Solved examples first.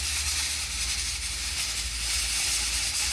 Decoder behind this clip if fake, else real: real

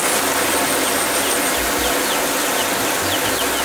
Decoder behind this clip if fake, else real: real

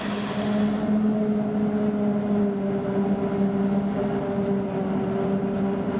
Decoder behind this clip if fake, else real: real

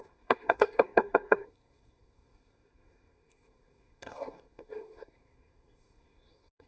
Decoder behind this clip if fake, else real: fake, codec, SNAC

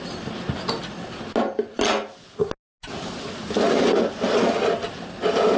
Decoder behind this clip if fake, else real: real